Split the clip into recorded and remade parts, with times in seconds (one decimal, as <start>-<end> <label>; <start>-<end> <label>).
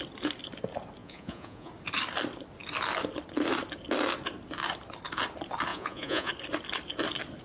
0.0-1.0 recorded; 1.0-1.7 remade; 1.7-5.7 recorded; 5.7-6.3 remade; 6.3-7.4 recorded